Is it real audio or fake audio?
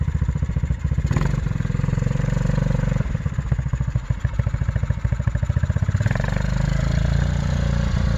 fake